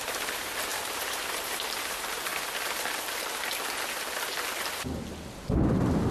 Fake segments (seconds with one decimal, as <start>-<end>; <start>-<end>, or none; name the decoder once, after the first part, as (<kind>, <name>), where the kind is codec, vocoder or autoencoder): 0.0-2.3 (vocoder, BigVGAN v2)